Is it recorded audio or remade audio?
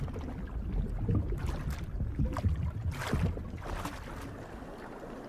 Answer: recorded